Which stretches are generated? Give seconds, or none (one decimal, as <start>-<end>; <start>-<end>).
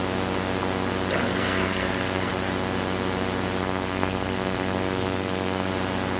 1.2-2.3; 3.6-5.7